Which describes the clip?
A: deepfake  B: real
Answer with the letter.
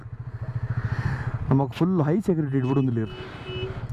B